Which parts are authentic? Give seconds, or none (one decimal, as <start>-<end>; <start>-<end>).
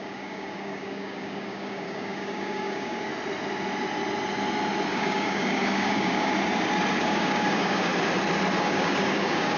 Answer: 3.1-4.9; 6.3-7.0; 7.9-8.6